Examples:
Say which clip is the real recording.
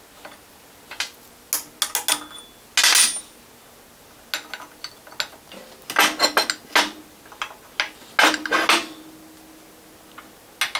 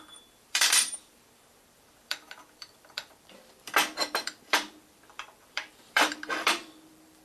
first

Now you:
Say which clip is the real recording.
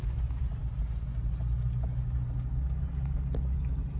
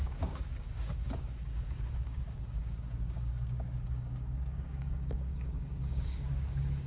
first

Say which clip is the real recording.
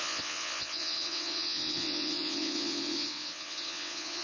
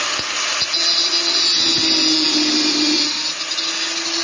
second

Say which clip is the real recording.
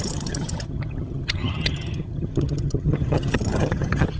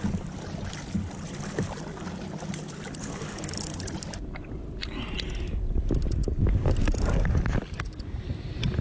second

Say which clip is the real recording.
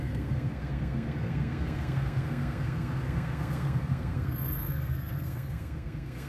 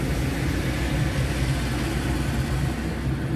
second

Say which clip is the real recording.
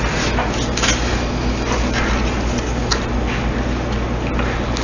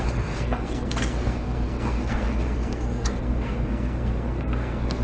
first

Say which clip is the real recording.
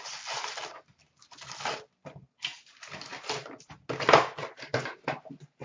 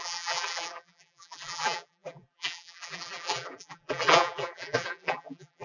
first